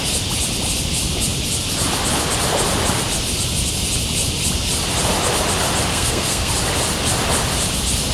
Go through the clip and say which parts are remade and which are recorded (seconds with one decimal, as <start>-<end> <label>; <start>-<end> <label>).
0.0-5.9 recorded; 5.9-6.5 remade; 6.5-8.1 recorded